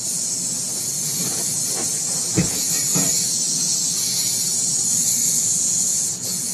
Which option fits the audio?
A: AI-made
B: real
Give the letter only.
A